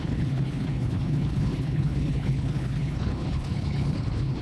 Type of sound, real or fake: fake